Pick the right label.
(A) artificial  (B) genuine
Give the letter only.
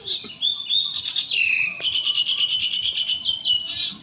B